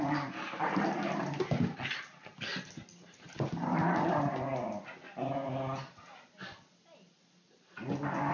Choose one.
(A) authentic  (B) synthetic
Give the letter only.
A